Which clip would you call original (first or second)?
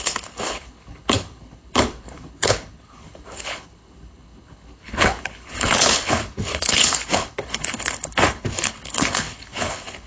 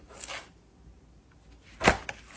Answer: second